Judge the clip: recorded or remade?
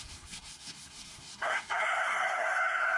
remade